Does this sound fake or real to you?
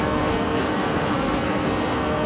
fake